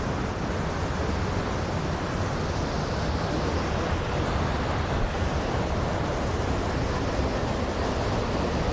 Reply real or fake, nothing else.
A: real